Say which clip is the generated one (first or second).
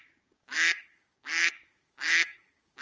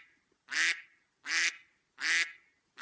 first